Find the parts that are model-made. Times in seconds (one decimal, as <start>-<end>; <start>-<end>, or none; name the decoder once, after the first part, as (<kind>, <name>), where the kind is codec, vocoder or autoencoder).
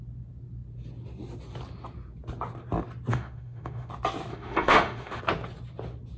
3.1-3.9 (autoencoder, DAC-VAE); 4.3-5.2